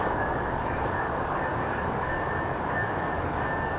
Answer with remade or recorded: remade